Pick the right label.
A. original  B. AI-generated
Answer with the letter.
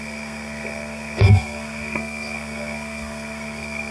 B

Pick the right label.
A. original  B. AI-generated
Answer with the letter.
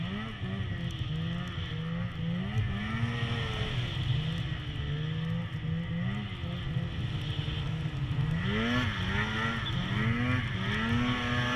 A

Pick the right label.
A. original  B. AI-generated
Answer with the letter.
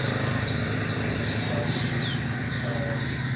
A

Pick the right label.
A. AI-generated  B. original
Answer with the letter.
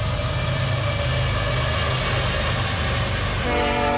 B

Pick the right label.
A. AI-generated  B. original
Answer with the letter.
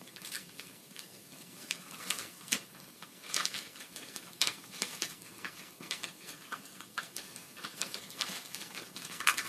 A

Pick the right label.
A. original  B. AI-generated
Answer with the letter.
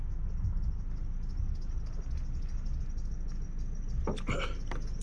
A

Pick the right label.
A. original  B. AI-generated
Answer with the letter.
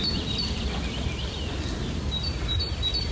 A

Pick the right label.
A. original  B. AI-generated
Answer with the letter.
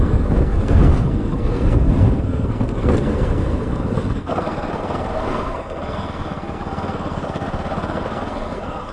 B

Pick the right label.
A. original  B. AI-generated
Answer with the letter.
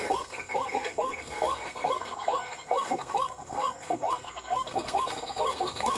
B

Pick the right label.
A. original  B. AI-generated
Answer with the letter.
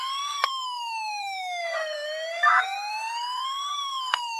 B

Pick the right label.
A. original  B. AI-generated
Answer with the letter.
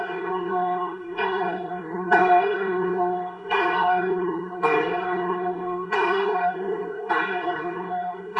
B